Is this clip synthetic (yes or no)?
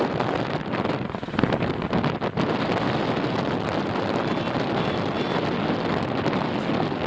no